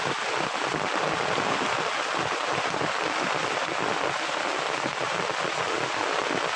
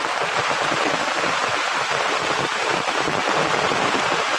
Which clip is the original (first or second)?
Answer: first